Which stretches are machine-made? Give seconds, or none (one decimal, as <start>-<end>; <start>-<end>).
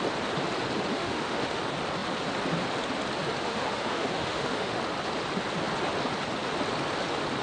0.9-1.6; 3.4-4.8